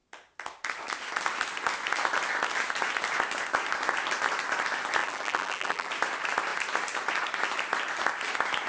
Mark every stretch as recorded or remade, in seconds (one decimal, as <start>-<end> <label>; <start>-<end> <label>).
0.0-5.0 recorded; 5.0-5.9 remade; 5.9-8.7 recorded